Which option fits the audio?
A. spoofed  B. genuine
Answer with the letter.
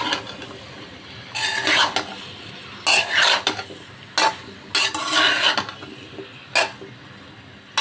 B